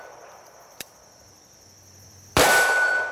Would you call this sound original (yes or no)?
no